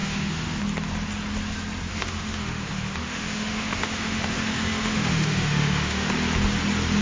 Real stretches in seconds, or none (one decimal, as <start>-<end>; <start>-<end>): 0.6-1.9; 6.1-7.0